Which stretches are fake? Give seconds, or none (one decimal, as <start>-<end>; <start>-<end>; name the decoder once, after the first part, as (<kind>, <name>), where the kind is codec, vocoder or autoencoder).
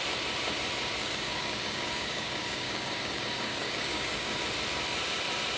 1.0-4.4 (codec, DAC)